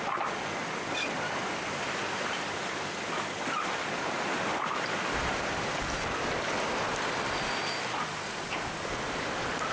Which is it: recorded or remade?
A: recorded